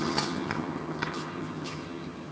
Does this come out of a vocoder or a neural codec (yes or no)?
yes